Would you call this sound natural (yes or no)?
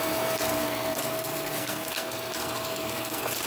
no